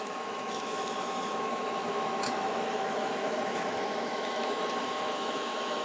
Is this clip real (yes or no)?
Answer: no